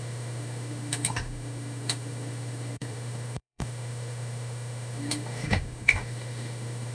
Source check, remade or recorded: remade